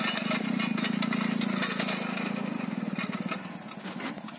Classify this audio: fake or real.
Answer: real